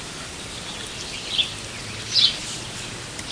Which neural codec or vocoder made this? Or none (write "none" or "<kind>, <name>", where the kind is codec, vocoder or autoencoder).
none